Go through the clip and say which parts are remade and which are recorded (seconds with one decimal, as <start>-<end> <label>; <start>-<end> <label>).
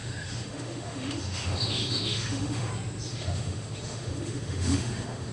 0.0-2.7 remade; 2.7-3.1 recorded; 3.1-5.3 remade